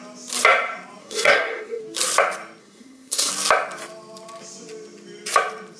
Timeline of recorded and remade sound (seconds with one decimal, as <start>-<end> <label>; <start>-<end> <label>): 0.0-1.0 recorded; 1.0-1.8 remade; 1.8-2.6 recorded; 2.6-3.3 remade; 3.3-5.8 recorded